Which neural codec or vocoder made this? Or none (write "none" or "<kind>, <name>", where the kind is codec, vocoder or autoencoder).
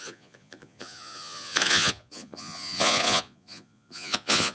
vocoder, Vocos